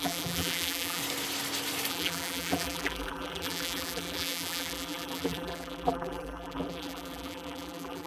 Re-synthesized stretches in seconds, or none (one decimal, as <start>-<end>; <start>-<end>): 0.0-1.0; 1.9-8.1